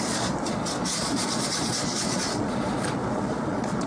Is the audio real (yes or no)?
no